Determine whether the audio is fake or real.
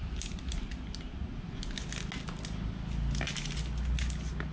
real